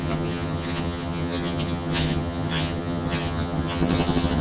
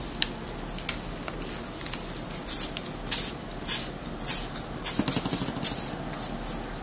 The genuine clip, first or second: second